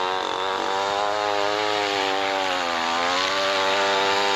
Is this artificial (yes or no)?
no